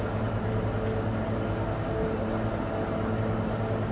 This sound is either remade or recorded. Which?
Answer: recorded